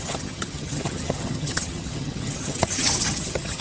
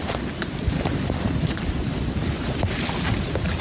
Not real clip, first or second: first